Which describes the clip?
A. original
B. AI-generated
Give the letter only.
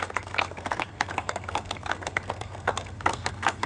B